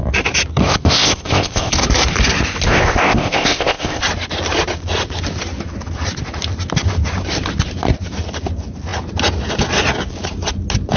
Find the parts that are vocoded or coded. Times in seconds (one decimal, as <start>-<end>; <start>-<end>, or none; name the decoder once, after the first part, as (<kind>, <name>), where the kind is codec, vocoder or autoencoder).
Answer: 0.6-1.7 (codec, ZipCodec); 2.7-4.0